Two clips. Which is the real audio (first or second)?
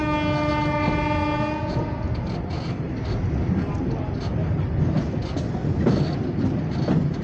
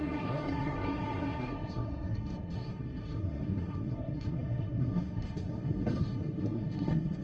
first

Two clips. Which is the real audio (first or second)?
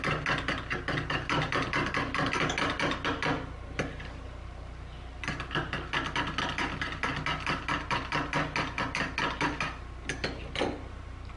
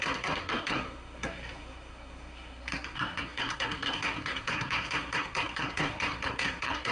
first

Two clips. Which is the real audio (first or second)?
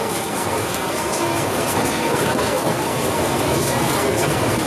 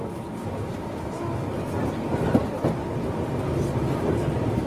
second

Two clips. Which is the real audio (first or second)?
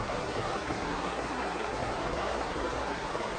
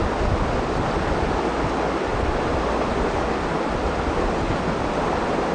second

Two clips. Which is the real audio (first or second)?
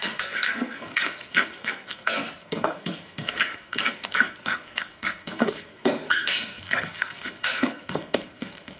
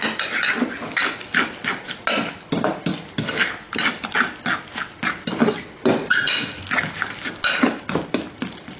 second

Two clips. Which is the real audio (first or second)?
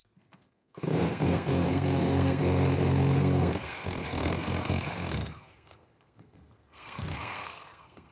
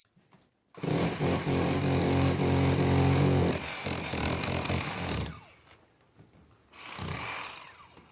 second